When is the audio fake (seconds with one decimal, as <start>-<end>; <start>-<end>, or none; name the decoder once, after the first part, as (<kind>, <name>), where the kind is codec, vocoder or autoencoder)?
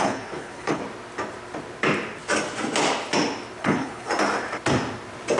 0.0-0.8 (codec, HILCodec); 3.6-4.1